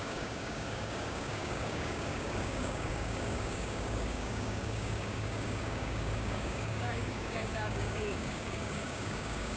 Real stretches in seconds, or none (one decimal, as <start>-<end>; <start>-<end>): none